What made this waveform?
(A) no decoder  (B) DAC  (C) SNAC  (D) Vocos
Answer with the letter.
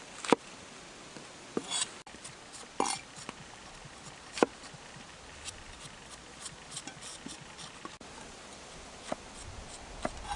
A